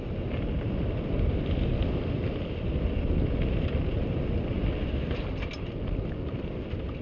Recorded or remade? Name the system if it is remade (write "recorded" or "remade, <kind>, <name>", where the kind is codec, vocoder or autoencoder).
recorded